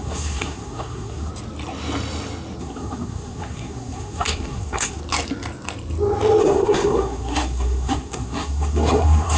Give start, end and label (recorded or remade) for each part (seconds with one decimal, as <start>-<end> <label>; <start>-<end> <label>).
0.0-1.3 remade; 1.3-2.6 recorded; 2.6-5.0 remade; 5.0-6.4 recorded; 6.4-9.4 remade